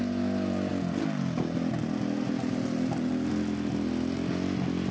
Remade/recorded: recorded